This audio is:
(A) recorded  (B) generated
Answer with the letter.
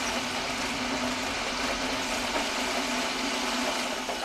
A